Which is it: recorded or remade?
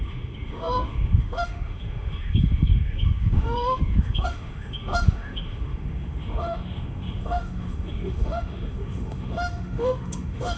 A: remade